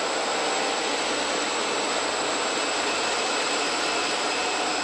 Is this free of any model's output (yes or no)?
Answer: yes